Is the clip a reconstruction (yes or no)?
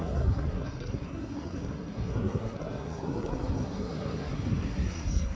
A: yes